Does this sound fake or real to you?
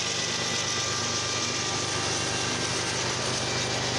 real